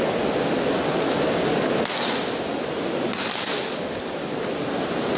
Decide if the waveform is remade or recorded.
recorded